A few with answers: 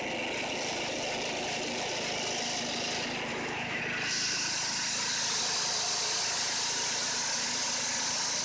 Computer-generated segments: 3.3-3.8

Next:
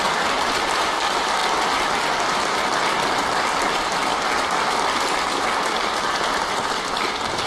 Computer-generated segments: none

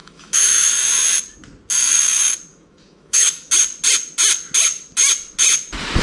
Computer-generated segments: 0.0-0.7; 2.5-3.5

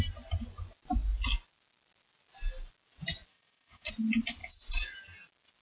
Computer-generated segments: 3.3-3.9

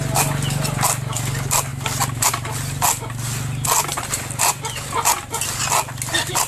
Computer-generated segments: none